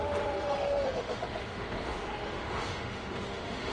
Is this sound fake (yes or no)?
yes